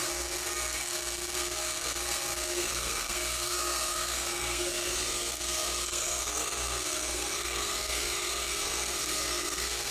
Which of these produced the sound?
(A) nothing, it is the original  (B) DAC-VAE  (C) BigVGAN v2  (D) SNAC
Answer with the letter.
D